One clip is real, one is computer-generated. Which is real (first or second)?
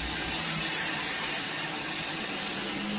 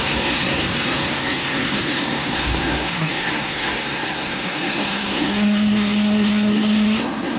first